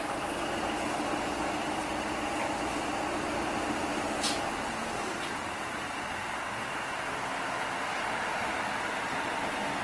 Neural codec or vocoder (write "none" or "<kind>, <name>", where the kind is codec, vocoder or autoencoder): none